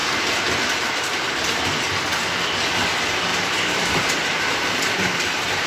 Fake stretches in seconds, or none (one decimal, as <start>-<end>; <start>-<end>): 0.0-1.3; 3.3-5.7